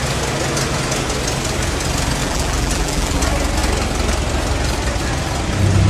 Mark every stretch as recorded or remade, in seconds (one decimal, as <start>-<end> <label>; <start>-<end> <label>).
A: 0.0-2.2 recorded; 2.2-3.2 remade; 3.2-5.9 recorded